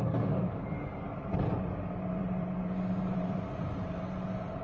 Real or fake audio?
fake